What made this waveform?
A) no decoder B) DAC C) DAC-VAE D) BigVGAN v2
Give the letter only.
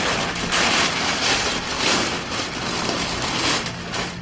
A